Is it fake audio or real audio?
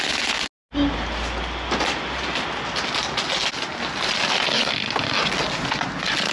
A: real